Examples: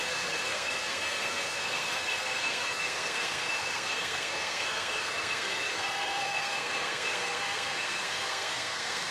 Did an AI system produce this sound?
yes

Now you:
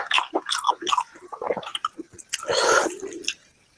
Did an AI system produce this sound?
no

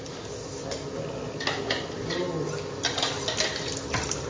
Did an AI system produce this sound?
no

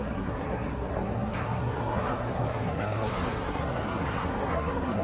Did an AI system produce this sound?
yes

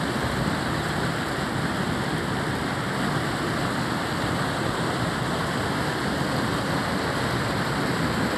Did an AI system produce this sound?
no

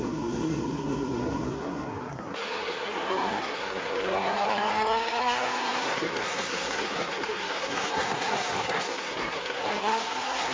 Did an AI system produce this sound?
yes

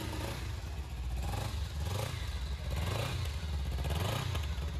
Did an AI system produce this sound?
no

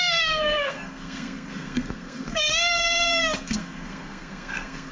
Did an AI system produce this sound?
yes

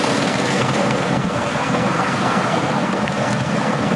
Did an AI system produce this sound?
yes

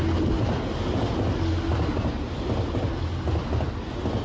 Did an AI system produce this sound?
no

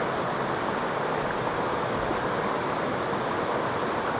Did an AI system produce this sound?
no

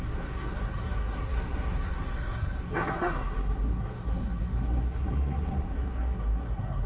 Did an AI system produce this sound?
yes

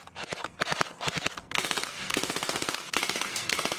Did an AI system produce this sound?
yes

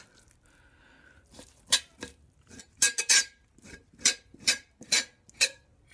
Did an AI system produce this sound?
no